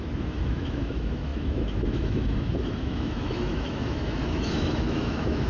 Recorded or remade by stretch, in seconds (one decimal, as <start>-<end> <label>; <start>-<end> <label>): 0.0-5.5 remade